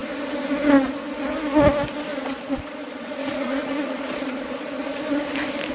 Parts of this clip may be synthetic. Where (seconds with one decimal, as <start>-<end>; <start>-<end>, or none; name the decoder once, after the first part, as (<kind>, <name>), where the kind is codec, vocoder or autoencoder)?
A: 2.1-5.0 (vocoder, Vocos)